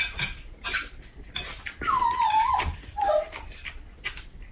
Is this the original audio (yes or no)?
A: yes